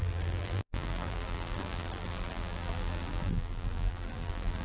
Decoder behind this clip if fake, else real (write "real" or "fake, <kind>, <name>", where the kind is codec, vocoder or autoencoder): fake, vocoder, BigVGAN v2